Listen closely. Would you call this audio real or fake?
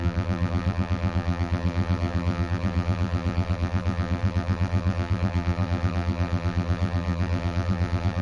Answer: fake